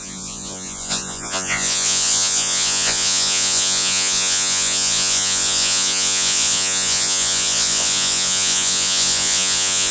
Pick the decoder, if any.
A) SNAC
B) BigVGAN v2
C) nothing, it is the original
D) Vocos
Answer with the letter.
D